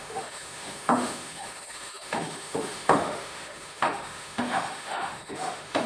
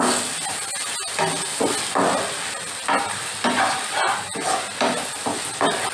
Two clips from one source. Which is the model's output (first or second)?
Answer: first